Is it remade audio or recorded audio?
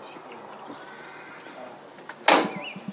recorded